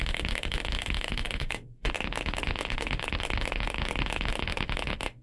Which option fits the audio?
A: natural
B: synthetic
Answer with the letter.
B